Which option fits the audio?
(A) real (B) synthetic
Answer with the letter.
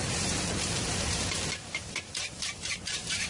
B